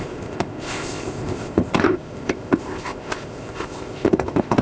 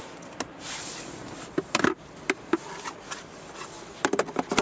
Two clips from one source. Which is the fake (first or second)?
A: first